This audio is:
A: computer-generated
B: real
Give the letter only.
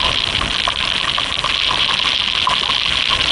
B